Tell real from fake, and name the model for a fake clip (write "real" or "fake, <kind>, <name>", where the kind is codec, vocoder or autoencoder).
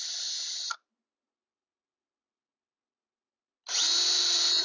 real